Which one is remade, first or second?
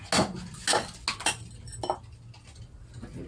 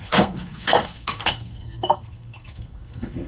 second